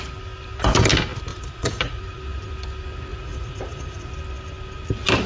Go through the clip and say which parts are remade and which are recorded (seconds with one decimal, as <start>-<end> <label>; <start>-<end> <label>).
0.0-1.3 recorded; 1.3-2.0 remade; 2.0-3.1 recorded; 3.1-4.1 remade; 4.1-5.3 recorded